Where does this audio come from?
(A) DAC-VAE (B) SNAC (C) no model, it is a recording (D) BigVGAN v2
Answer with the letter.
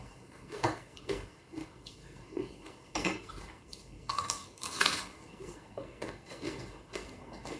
B